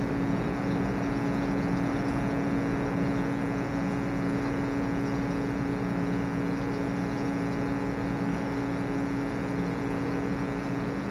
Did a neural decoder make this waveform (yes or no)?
no